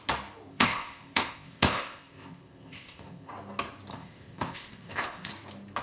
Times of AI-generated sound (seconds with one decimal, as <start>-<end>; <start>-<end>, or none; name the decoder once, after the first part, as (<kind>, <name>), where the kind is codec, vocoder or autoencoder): 0.5-3.3 (codec, ZipCodec); 3.9-5.3